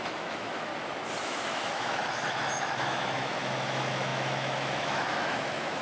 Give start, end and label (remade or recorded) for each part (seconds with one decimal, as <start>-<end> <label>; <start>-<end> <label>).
0.0-0.7 remade; 0.7-1.2 recorded; 1.2-5.8 remade